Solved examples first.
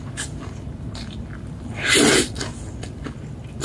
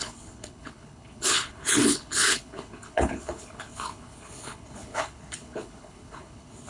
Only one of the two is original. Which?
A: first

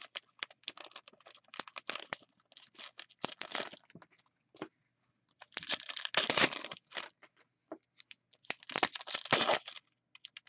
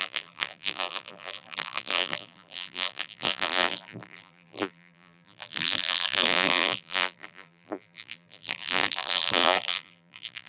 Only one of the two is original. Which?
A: first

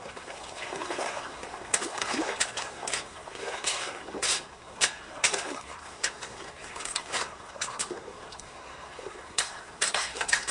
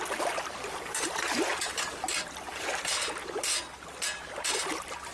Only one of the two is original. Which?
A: second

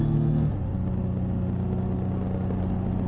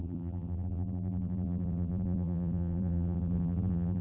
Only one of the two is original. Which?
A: first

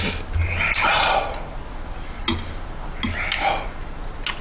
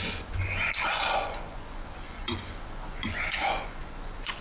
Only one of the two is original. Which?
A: first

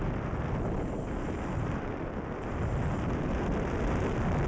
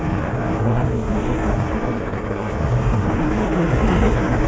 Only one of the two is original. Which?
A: first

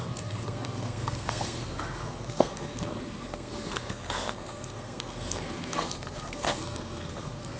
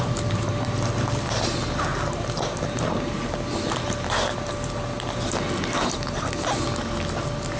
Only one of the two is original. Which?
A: second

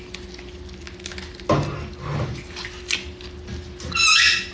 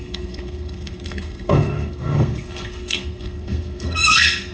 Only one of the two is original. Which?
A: first